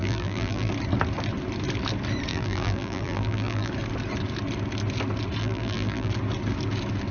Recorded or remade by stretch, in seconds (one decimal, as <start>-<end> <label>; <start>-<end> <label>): 0.0-0.7 remade; 0.7-2.3 recorded; 2.3-3.7 remade; 3.7-5.4 recorded; 5.4-6.1 remade; 6.1-7.1 recorded

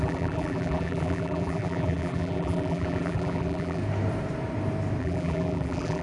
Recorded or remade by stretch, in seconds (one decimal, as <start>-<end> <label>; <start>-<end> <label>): 0.0-3.8 remade; 3.8-5.0 recorded; 5.0-6.0 remade

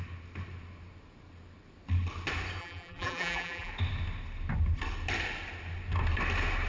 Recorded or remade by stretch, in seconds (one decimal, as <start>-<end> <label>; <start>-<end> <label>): 0.0-2.6 recorded; 2.6-3.7 remade; 3.7-6.7 recorded

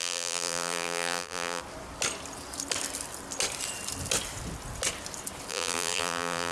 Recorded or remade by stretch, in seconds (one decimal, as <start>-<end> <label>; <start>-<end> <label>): 0.0-1.6 remade; 1.6-5.5 recorded; 5.5-6.5 remade

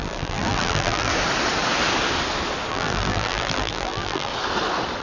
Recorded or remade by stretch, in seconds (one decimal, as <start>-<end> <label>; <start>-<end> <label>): 0.0-1.1 remade; 1.1-2.7 recorded; 2.7-4.3 remade; 4.3-5.0 recorded

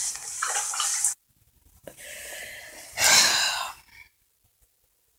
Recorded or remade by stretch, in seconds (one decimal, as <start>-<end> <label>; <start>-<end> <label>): 0.0-5.2 recorded

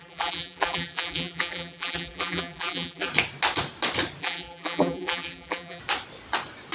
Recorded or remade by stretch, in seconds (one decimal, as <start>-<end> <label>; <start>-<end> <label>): 0.0-3.1 remade; 3.1-4.2 recorded; 4.2-5.8 remade; 5.8-6.7 recorded

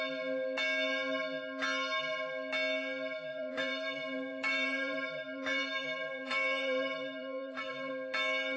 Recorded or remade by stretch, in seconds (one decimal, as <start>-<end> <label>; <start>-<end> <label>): 0.0-3.3 recorded; 3.3-7.9 remade; 7.9-8.6 recorded